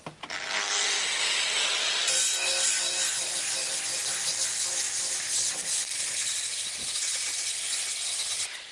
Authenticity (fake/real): real